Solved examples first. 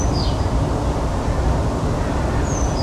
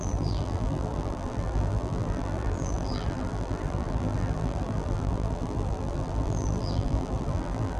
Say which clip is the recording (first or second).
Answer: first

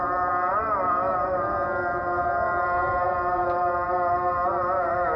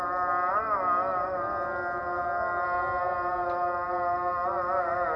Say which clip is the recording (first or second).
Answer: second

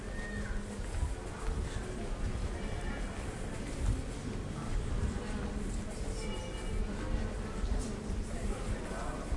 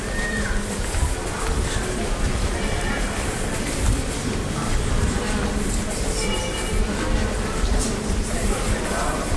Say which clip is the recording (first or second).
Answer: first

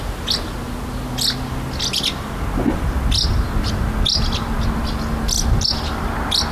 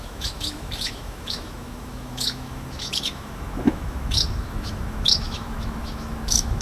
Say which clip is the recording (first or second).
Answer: first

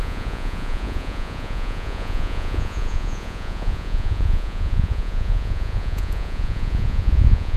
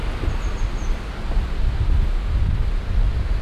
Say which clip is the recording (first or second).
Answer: second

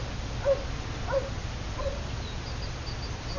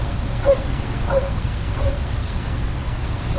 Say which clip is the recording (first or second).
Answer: first